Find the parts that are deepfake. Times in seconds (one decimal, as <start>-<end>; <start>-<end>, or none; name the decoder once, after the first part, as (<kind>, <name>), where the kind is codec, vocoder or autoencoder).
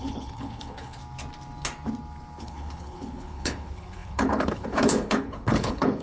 0.0-1.0 (codec, HILCodec); 2.4-6.0